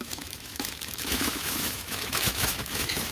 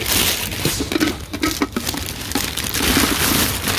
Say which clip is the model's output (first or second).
first